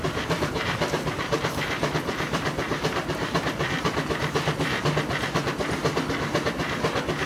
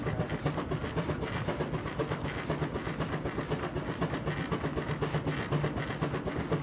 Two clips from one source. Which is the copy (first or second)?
first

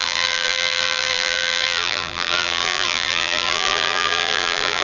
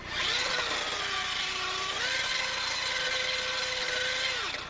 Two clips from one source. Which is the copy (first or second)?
first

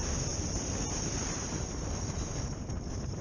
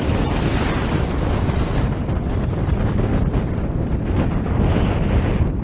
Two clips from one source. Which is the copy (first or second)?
first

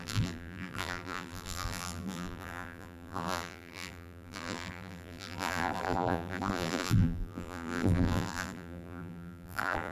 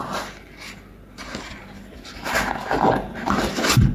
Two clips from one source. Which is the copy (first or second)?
first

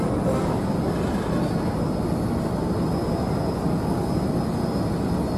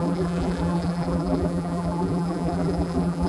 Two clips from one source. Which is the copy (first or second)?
second